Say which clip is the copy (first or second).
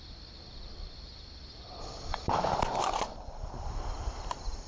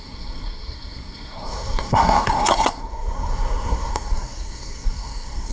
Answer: second